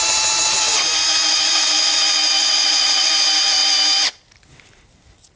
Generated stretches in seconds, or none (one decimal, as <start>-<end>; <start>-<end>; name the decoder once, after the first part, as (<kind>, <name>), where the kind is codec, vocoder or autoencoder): 1.3-2.0 (vocoder, Vocos); 2.4-3.1